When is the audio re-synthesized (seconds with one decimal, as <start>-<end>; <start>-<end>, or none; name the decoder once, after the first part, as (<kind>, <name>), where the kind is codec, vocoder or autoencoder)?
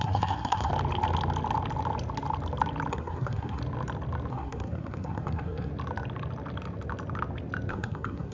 0.0-0.7 (codec, SNAC); 2.9-3.6; 4.3-5.7; 7.7-8.3